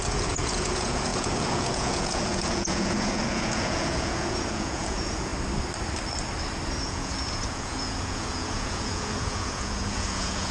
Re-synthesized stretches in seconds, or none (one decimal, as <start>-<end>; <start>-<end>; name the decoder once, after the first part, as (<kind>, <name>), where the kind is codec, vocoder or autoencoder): 0.0-5.3 (vocoder, Vocos); 6.8-10.5